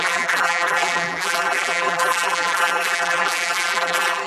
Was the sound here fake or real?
fake